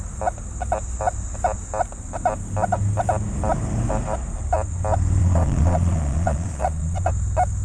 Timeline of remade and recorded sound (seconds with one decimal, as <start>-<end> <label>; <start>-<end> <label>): 0.0-5.2 recorded; 5.2-7.1 remade; 7.1-7.6 recorded